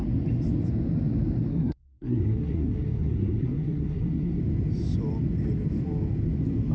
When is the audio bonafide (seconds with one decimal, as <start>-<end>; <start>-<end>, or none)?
0.0-1.5; 4.4-6.7